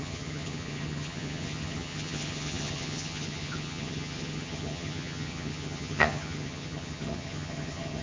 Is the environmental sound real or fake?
fake